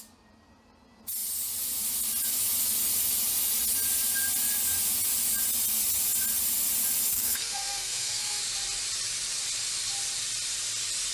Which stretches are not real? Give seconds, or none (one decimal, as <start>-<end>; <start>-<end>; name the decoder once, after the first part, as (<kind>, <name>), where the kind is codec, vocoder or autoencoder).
7.1-8.4 (codec, SNAC)